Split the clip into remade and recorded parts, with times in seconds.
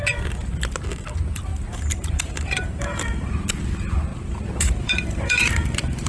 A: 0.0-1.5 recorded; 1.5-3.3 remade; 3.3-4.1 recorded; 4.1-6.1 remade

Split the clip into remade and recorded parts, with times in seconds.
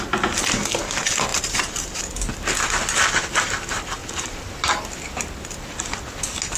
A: 0.0-1.3 recorded; 1.3-2.0 remade; 2.0-4.0 recorded; 4.0-4.5 remade; 4.5-6.6 recorded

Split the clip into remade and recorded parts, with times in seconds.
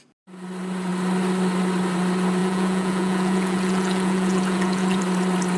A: 0.0-2.4 recorded; 2.4-5.0 remade; 5.0-5.6 recorded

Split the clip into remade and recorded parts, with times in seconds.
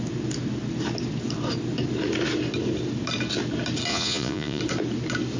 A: 0.0-3.9 recorded; 3.9-4.6 remade; 4.6-5.4 recorded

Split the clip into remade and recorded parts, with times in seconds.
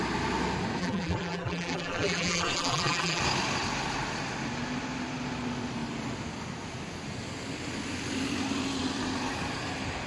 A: 0.0-0.8 recorded; 0.8-3.2 remade; 3.2-10.1 recorded